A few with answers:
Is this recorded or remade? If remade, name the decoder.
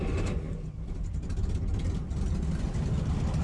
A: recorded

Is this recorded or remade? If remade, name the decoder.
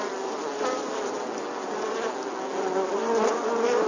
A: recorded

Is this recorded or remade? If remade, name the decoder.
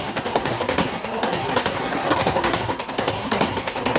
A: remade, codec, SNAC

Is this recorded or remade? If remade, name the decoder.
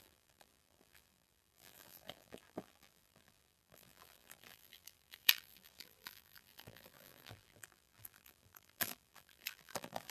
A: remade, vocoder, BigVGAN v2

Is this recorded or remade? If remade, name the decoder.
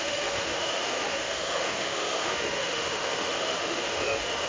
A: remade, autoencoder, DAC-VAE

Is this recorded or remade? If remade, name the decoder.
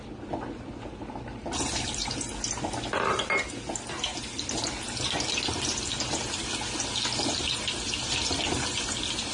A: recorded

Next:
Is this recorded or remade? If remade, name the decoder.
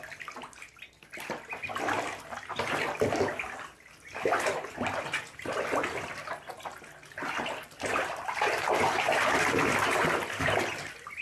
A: recorded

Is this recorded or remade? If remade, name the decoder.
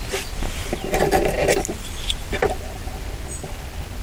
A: recorded